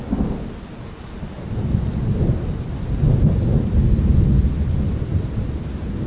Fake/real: real